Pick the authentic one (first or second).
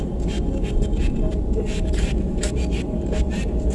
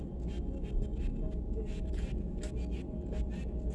second